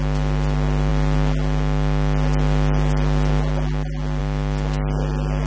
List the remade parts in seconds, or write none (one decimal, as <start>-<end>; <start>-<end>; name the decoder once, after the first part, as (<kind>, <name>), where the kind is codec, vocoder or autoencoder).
none